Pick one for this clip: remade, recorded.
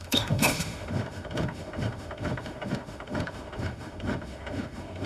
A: remade